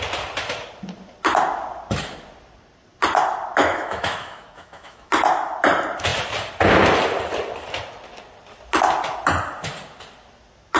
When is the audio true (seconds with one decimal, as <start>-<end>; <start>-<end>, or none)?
0.0-3.6; 5.1-10.8